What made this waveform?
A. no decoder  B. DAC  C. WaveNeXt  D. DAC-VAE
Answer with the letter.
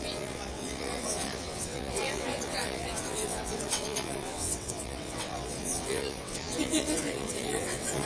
C